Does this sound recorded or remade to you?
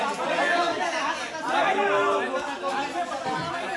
recorded